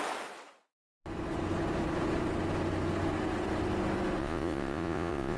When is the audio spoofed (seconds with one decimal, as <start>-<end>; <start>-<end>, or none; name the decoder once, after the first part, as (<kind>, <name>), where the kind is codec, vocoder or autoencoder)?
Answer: 4.2-5.4 (vocoder, Vocos)